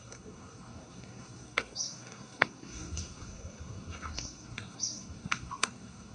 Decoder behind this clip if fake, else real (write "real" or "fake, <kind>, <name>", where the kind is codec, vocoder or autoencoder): fake, codec, SNAC